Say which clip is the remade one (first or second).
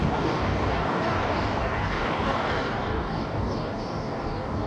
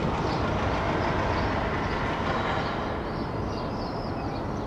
first